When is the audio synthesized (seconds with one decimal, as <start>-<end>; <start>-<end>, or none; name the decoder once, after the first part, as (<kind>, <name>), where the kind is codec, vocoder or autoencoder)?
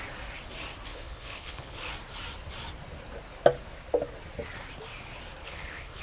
0.9-1.9 (codec, HILCodec); 5.4-6.0